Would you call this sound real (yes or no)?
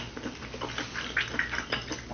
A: yes